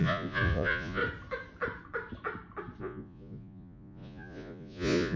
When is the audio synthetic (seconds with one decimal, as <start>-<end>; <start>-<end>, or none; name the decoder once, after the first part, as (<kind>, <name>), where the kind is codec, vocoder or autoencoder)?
0.0-1.0 (vocoder, Vocos); 2.8-5.2